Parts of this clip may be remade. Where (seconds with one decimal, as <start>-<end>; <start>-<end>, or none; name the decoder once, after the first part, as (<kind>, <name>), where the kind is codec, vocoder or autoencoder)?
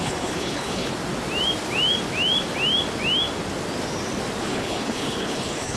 0.0-0.9 (codec, HILCodec); 4.4-5.8